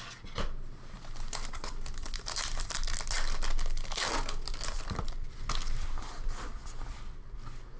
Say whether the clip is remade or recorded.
recorded